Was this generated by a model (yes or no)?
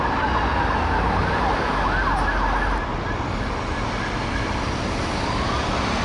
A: no